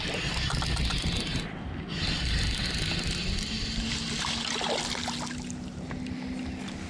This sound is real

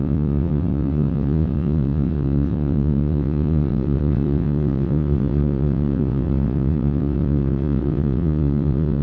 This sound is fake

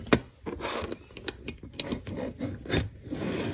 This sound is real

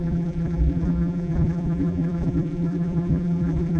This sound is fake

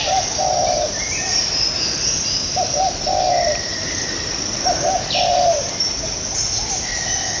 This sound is real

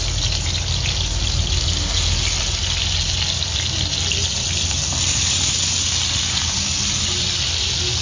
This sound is real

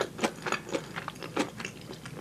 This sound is real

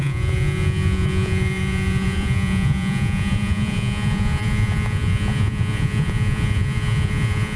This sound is fake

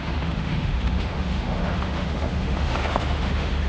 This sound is fake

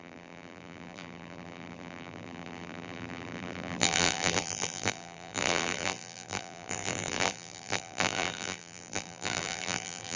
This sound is fake